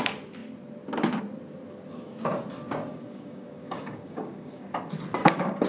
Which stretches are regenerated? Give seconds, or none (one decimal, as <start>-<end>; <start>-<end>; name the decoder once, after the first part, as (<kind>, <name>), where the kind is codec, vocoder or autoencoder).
2.9-4.7 (codec, DAC); 5.2-5.7